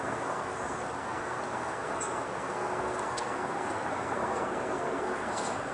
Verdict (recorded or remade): remade